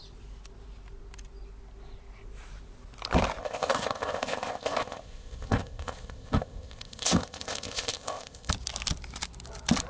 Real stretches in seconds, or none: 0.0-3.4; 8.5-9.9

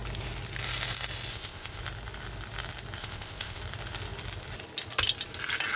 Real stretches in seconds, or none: 0.0-1.3; 1.8-3.0; 3.6-5.8

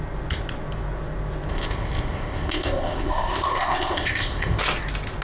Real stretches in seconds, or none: 0.0-1.5; 4.6-5.2

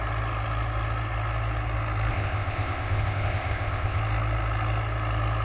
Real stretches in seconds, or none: 0.0-2.1; 4.0-5.4

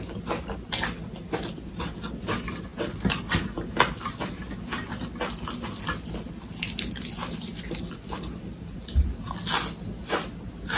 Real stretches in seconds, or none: 0.0-10.8

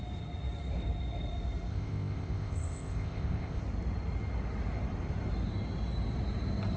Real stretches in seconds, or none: 0.0-1.7; 3.6-6.8